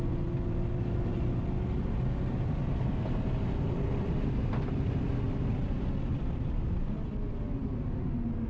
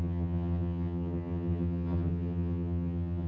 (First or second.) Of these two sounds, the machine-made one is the second